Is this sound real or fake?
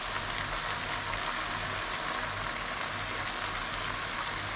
real